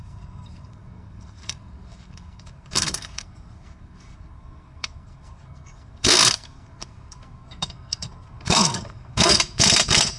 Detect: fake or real fake